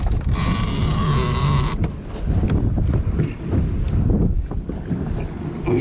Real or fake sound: real